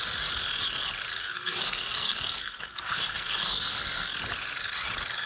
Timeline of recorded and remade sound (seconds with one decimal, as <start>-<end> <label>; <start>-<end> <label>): 0.0-1.2 recorded; 1.2-4.2 remade; 4.2-5.3 recorded